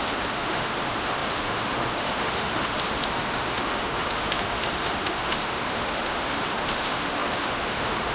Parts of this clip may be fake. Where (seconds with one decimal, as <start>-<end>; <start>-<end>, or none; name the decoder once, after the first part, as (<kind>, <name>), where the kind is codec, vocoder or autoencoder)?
0.0-8.1 (autoencoder, DAC-VAE)